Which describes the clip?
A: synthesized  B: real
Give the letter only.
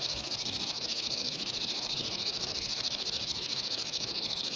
A